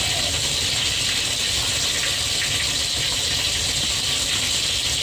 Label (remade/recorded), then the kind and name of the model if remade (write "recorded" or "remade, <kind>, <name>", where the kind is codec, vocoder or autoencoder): recorded